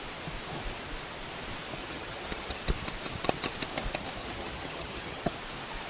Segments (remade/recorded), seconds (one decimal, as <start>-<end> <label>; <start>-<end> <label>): 0.0-1.8 recorded; 1.8-2.6 remade; 2.6-4.2 recorded; 4.2-5.3 remade; 5.3-5.9 recorded